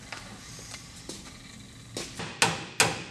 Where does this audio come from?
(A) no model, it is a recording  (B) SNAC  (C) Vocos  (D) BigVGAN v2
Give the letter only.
A